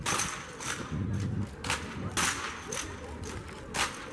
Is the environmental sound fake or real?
real